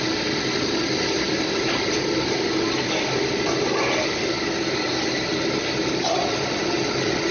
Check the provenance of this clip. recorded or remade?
recorded